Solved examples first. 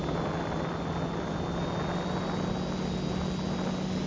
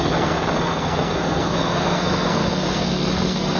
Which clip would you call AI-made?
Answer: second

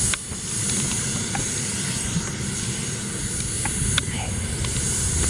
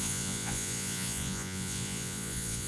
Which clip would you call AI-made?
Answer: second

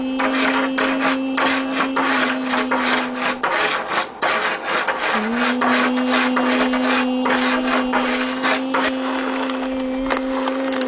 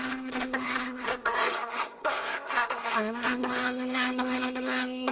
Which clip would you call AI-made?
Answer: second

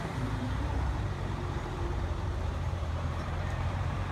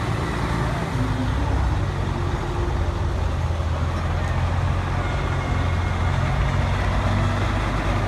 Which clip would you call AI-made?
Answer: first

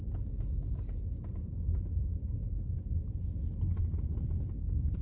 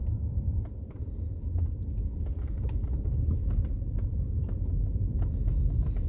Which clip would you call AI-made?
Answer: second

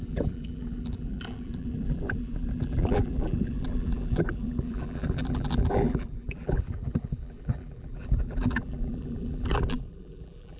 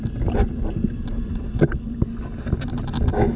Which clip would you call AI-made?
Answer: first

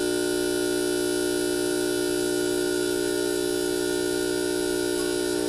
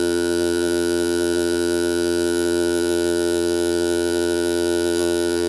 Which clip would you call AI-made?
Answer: second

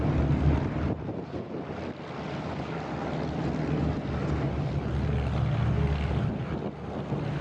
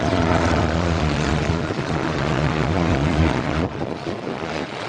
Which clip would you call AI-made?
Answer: second